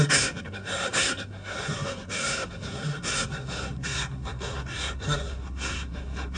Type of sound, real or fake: fake